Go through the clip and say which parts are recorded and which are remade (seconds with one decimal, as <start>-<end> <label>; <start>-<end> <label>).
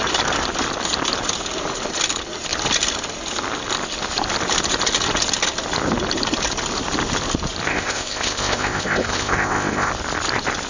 0.0-7.7 recorded; 7.7-9.9 remade; 9.9-10.7 recorded